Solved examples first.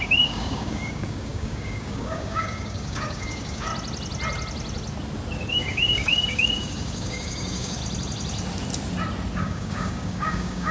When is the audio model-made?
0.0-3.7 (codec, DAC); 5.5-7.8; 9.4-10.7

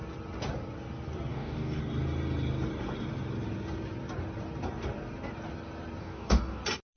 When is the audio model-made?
1.3-1.8 (codec, DAC); 6.0-6.6

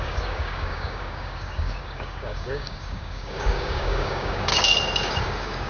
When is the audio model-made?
0.0-4.5 (codec, DAC); 5.1-5.7

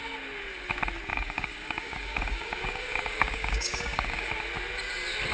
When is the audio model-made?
1.1-4.3 (codec, DAC)

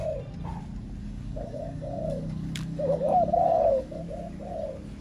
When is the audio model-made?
1.0-4.0 (codec, DAC)

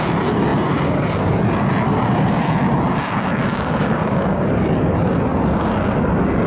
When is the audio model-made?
3.4-4.5 (codec, DAC)

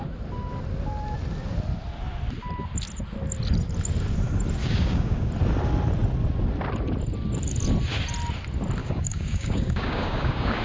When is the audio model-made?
4.6-5.3 (codec, DAC); 8.8-10.6